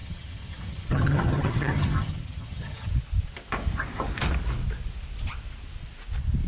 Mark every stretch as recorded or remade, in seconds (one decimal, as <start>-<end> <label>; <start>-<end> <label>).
0.0-2.9 remade; 2.9-6.5 recorded